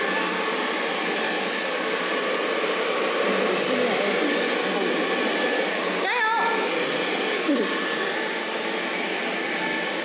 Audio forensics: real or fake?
real